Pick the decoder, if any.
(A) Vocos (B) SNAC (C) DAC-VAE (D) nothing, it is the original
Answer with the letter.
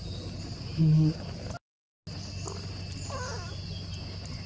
D